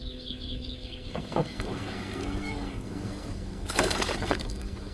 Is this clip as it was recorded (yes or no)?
no